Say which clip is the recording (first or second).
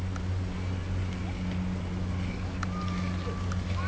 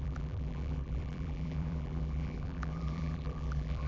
first